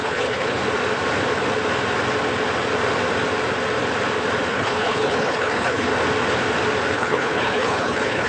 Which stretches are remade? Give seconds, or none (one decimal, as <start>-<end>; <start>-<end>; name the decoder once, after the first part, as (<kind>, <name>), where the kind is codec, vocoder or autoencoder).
0.0-0.6 (codec, HILCodec); 4.5-5.9; 6.9-8.3